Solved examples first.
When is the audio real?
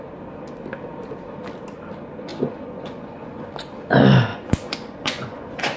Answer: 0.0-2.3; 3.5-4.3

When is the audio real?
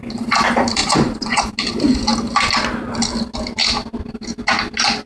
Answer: 0.0-0.8; 1.4-5.1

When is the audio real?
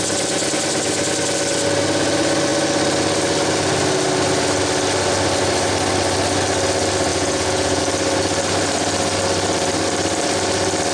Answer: 0.0-7.1; 7.8-10.9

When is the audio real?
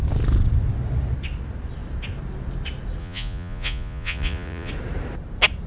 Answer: 0.0-3.0; 4.7-5.7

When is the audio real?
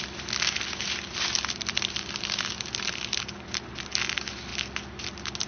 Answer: 0.0-5.5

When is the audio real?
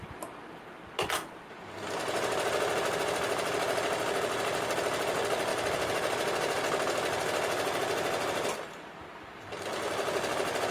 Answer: 0.0-10.7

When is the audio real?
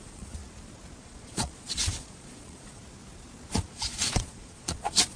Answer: 0.4-1.0; 2.8-3.5